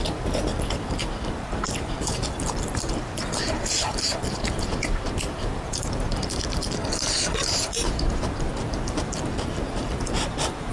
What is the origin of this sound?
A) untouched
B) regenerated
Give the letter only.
B